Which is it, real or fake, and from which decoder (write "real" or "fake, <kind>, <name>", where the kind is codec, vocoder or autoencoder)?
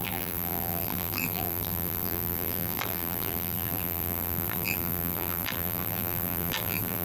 fake, vocoder, BigVGAN v2